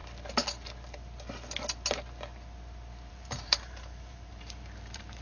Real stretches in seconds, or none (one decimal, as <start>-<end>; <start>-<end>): 0.0-3.1